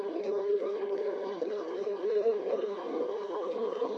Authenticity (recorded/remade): remade